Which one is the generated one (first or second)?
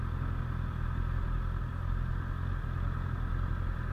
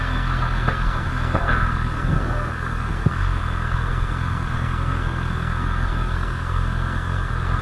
second